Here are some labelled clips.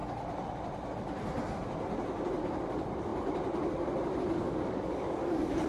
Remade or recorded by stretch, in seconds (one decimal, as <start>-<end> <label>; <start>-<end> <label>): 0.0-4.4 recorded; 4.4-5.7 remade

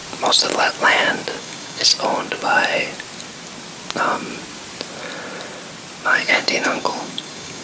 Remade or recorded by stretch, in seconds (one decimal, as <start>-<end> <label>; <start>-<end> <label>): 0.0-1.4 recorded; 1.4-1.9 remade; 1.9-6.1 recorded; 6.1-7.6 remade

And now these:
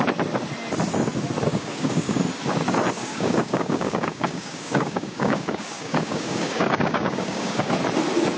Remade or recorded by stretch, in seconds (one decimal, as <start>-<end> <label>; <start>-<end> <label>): 0.0-1.5 recorded; 1.5-2.2 remade; 2.2-3.0 recorded; 3.0-7.7 remade; 7.7-8.4 recorded